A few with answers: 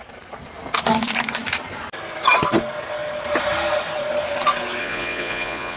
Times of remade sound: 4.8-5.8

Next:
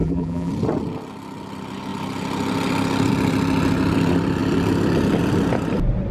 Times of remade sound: 0.0-0.5

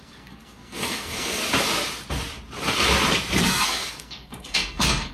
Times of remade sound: 0.0-1.4; 3.4-5.1

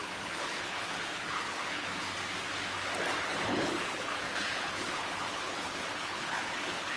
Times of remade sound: 0.0-1.9; 3.2-7.0

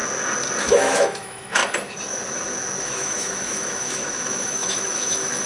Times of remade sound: 0.6-1.6; 2.8-5.5